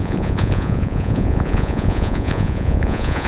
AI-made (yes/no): yes